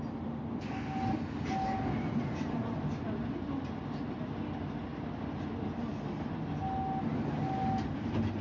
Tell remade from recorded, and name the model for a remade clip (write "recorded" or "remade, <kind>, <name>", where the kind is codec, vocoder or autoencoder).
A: recorded